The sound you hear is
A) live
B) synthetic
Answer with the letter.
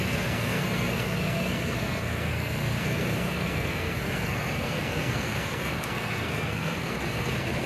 B